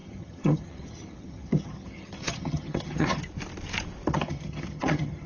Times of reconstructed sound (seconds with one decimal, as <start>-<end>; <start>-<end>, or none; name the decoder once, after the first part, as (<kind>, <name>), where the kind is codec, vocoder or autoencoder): 0.0-3.2 (vocoder, HiFi-GAN); 4.1-5.3